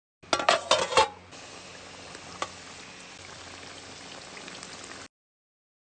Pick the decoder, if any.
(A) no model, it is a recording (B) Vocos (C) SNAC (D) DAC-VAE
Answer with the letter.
A